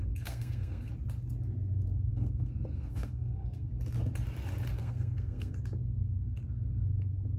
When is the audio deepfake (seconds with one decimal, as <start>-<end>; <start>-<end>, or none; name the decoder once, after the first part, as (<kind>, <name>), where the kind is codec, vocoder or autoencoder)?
0.0-0.9 (codec, SNAC); 2.1-3.7; 4.8-5.6

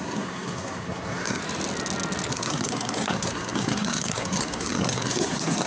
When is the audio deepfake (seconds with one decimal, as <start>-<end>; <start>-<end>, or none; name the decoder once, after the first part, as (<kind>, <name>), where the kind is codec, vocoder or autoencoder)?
0.0-1.4 (codec, SNAC); 2.3-5.7

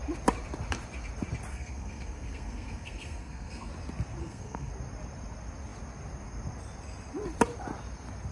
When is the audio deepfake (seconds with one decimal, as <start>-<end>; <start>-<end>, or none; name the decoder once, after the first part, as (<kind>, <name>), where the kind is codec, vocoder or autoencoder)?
1.5-3.7 (codec, SNAC); 4.2-4.7

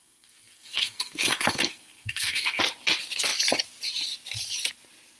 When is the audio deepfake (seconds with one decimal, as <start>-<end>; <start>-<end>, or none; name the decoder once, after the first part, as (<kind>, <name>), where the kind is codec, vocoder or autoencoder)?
0.0-2.6 (codec, SNAC)